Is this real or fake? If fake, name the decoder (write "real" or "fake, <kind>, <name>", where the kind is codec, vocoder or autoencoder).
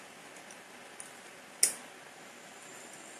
real